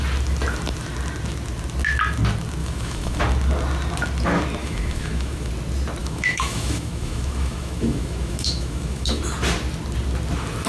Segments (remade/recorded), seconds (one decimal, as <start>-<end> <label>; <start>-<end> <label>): 0.0-2.6 recorded; 2.6-3.2 remade; 3.2-4.6 recorded; 4.6-5.5 remade; 5.5-6.0 recorded; 6.0-9.2 remade; 9.2-10.7 recorded

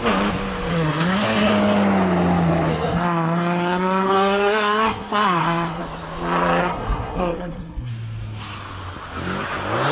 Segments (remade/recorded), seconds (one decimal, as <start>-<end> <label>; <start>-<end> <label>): 0.0-0.7 recorded; 0.7-1.5 remade; 1.5-2.7 recorded; 2.7-5.8 remade; 5.8-6.6 recorded; 6.6-7.9 remade; 7.9-9.9 recorded